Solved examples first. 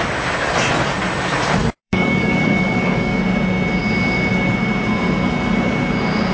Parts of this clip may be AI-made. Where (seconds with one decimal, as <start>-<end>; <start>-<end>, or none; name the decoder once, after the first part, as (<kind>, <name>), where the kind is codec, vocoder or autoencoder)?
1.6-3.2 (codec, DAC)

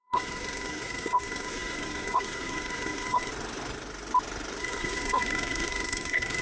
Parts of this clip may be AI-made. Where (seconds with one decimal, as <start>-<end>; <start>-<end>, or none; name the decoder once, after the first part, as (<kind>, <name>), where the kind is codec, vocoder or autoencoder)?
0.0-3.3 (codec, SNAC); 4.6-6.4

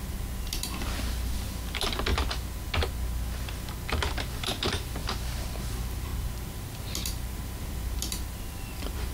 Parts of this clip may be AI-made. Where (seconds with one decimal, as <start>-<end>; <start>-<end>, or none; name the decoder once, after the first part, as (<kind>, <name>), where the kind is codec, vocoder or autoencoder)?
0.0-2.1 (vocoder, BigVGAN v2); 4.2-5.0; 5.6-9.1

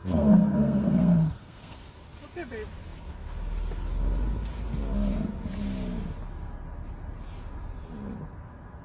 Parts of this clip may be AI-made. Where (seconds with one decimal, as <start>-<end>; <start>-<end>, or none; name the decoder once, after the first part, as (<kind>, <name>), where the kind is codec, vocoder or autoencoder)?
0.0-1.8 (codec, SNAC)

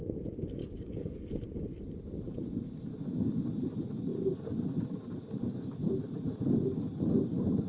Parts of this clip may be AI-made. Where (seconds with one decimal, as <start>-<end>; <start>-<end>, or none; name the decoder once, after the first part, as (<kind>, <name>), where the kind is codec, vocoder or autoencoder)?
0.6-1.3 (codec, DAC)

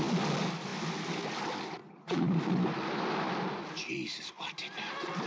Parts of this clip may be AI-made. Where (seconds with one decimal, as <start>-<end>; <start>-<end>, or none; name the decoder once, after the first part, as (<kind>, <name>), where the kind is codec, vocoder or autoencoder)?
1.8-2.4 (vocoder, Vocos)

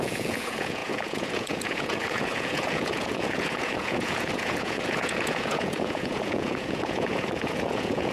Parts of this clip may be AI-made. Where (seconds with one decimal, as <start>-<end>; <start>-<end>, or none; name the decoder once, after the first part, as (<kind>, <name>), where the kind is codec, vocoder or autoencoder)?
0.0-8.1 (vocoder, Vocos)

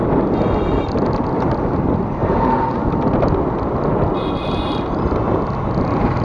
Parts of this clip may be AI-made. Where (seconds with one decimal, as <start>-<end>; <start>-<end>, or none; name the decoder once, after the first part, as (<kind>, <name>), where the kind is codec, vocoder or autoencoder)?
none